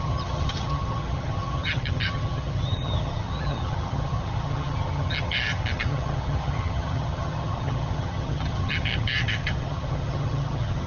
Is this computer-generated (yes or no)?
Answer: yes